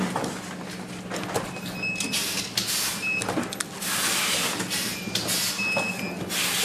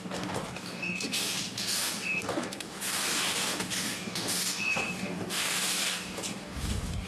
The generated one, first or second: second